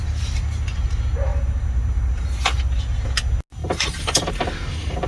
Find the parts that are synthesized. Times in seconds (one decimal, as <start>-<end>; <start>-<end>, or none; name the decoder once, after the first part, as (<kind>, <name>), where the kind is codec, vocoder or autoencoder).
1.3-2.8 (vocoder, BigVGAN v2); 3.6-4.3